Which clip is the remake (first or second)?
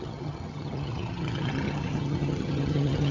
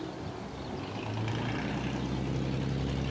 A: first